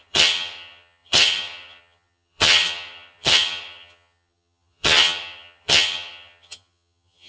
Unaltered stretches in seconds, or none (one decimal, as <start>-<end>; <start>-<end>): none